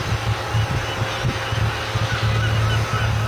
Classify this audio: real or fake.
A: real